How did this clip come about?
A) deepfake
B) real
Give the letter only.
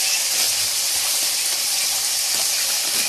A